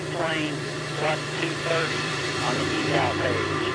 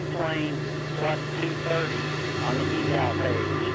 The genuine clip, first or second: second